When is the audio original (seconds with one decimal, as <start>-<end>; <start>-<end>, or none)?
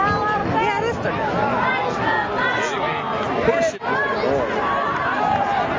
0.0-5.8